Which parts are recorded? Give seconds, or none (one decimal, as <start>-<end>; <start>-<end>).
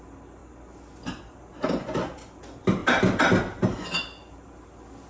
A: 0.0-5.1